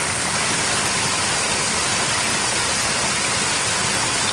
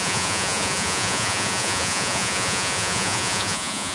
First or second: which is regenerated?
second